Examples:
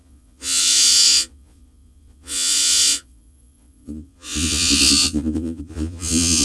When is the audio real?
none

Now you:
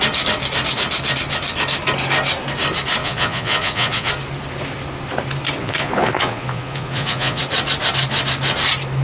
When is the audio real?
0.0-3.0; 4.1-5.6; 7.4-9.0

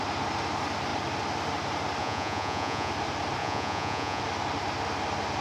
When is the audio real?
0.0-2.0; 2.9-3.4; 4.2-5.4